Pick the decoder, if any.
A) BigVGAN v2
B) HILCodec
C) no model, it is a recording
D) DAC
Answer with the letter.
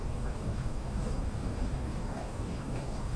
D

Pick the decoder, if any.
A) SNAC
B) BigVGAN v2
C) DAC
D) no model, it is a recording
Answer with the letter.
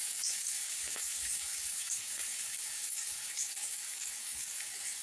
C